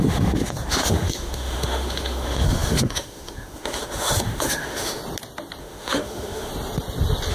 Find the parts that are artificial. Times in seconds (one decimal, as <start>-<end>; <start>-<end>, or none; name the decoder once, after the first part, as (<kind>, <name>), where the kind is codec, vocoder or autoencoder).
0.0-5.0 (autoencoder, DAC-VAE); 5.6-6.5